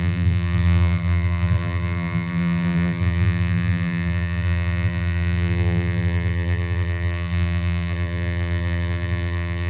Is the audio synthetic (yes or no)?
yes